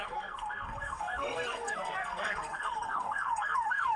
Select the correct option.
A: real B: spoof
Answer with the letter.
B